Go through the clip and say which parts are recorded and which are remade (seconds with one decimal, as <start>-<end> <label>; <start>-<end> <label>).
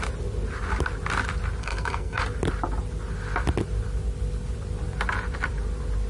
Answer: 0.0-1.6 recorded; 1.6-2.2 remade; 2.2-6.1 recorded